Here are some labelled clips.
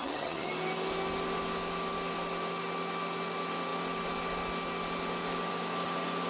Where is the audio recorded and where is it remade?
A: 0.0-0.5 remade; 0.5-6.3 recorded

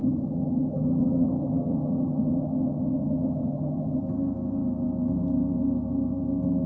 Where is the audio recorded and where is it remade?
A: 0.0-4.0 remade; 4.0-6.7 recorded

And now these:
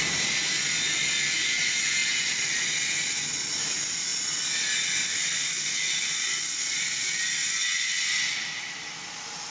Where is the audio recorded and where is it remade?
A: 0.0-9.5 recorded

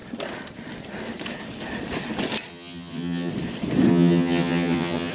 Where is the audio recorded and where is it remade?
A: 0.0-2.5 recorded; 2.5-3.3 remade; 3.3-3.9 recorded; 3.9-5.1 remade

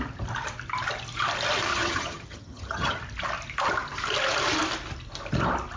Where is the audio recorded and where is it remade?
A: 0.0-1.7 recorded; 1.7-3.0 remade; 3.0-5.8 recorded

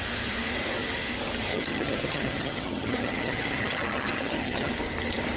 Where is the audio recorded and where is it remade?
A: 0.0-1.5 recorded; 1.5-4.7 remade; 4.7-5.4 recorded

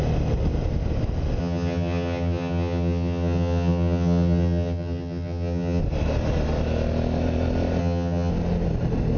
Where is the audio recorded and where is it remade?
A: 0.0-1.4 recorded; 1.4-5.8 remade; 5.8-7.8 recorded; 7.8-8.3 remade; 8.3-9.2 recorded

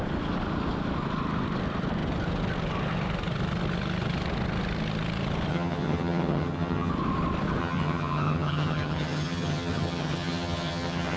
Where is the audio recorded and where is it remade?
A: 0.0-5.5 recorded; 5.5-6.9 remade; 6.9-7.6 recorded; 7.6-11.2 remade